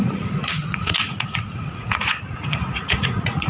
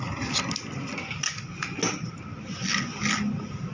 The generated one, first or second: first